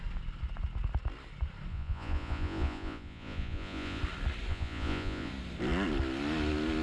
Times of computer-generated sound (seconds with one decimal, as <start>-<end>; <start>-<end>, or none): 1.7-4.0; 4.5-5.3